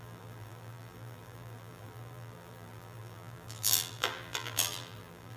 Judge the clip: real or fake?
fake